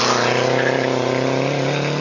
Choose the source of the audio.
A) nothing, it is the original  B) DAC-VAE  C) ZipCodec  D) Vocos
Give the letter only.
A